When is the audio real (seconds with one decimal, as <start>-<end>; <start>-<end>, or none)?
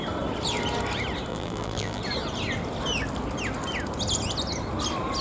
0.0-1.3; 2.0-5.2